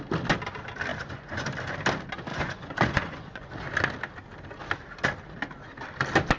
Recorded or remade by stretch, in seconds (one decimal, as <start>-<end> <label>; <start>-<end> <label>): 0.0-0.9 recorded; 0.9-1.5 remade; 1.5-2.3 recorded; 2.3-3.5 remade; 3.5-6.4 recorded